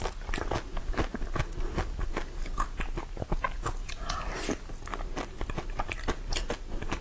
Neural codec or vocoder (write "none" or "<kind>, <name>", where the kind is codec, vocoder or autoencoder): none